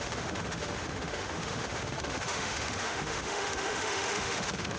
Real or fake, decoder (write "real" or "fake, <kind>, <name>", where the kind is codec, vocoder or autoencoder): fake, autoencoder, DAC-VAE